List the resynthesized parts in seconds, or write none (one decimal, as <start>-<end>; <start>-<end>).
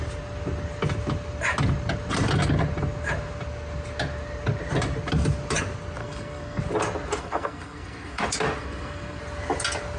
6.0-6.6; 7.2-8.2; 8.6-9.2